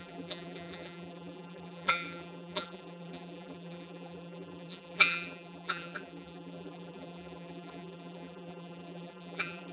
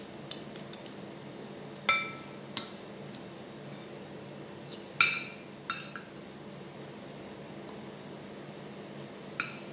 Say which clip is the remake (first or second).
first